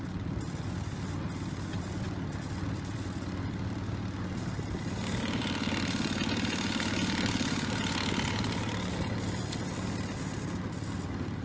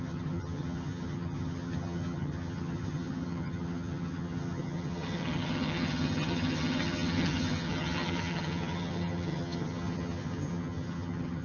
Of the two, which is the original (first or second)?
first